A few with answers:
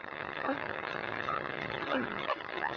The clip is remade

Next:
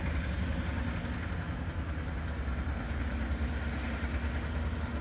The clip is recorded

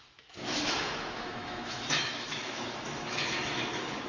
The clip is remade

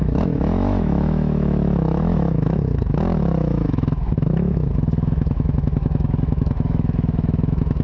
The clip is remade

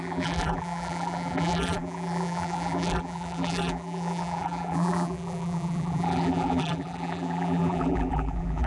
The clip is remade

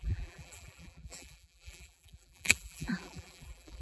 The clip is remade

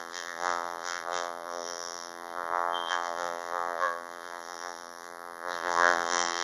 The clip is remade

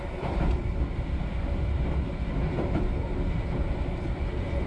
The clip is recorded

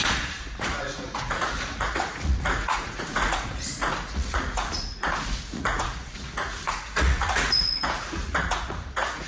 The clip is remade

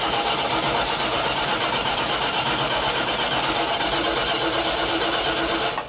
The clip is recorded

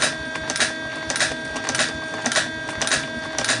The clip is recorded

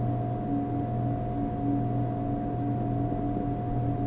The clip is recorded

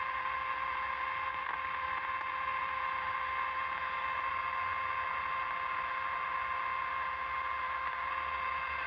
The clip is recorded